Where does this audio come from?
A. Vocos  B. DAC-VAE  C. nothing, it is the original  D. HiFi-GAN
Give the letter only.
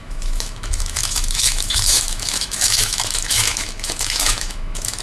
B